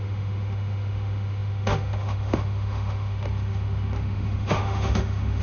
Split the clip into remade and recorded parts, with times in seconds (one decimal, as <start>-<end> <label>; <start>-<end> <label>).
0.0-5.4 remade